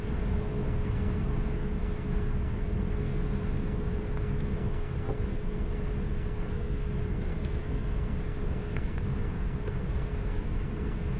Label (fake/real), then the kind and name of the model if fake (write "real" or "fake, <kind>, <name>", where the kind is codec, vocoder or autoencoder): fake, codec, SNAC